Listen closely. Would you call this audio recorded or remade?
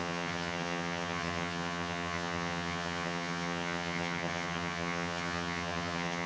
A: remade